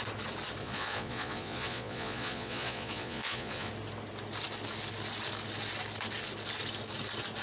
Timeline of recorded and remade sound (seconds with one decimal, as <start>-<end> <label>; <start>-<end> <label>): 0.0-0.6 recorded; 0.6-3.7 remade; 3.7-7.4 recorded